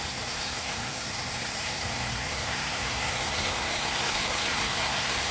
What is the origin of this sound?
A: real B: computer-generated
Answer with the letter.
B